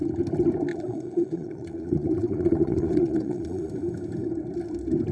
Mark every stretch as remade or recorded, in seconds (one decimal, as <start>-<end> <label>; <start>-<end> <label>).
0.0-0.7 recorded; 0.7-3.7 remade; 3.7-5.1 recorded